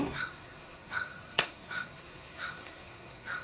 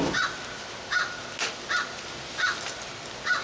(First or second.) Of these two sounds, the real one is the second